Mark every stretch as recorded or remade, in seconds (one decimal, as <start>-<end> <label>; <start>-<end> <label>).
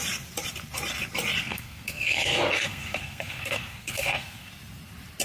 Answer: 0.0-1.4 recorded; 1.4-4.5 remade; 4.5-5.2 recorded